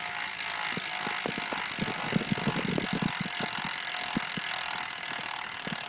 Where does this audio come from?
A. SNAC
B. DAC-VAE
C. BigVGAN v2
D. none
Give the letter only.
D